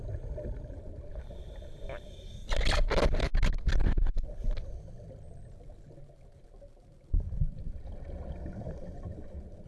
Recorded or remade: recorded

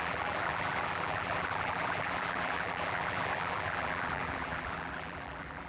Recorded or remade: remade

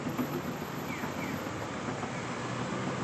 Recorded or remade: recorded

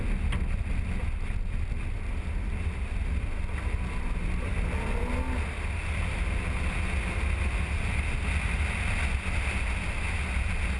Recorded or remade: recorded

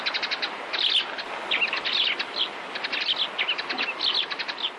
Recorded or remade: recorded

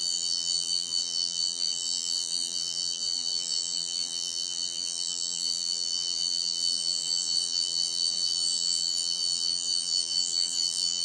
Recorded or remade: remade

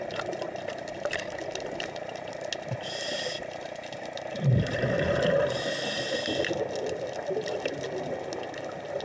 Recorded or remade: recorded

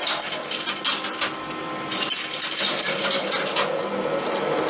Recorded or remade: recorded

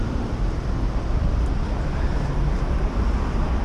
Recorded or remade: remade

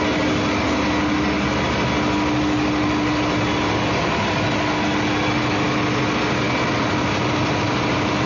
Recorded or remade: recorded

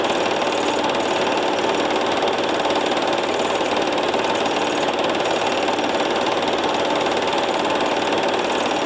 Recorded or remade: recorded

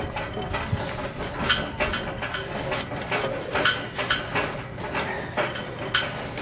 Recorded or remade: recorded